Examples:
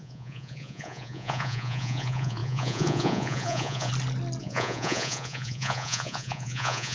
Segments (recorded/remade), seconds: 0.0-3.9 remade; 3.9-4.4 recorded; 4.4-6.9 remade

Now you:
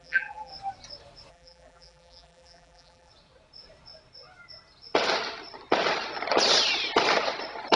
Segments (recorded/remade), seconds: 0.0-0.5 remade; 0.5-1.3 recorded; 1.3-3.1 remade; 3.1-7.8 recorded

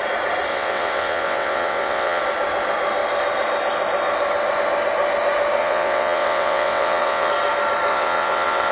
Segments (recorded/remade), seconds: 0.0-0.5 recorded; 0.5-2.2 remade; 2.2-5.6 recorded; 5.6-7.3 remade; 7.3-7.9 recorded; 7.9-8.7 remade

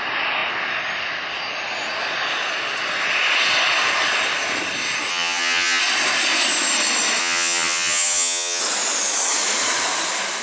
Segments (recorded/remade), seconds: 0.0-5.1 recorded; 5.1-5.8 remade; 5.8-7.2 recorded; 7.2-8.6 remade; 8.6-10.4 recorded

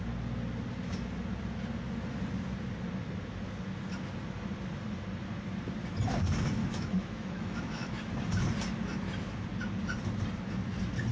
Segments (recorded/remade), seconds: 0.0-6.6 recorded; 6.6-8.1 remade; 8.1-11.1 recorded

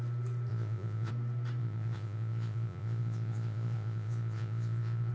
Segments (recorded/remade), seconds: 0.0-0.5 recorded; 0.5-1.1 remade; 1.1-1.6 recorded; 1.6-5.1 remade

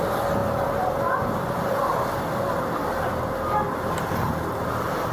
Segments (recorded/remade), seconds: 0.0-5.1 recorded